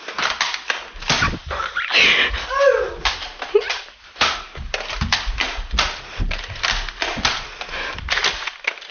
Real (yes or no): yes